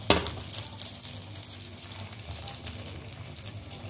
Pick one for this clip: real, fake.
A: real